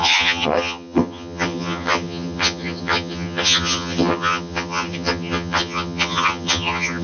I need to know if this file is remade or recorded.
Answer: remade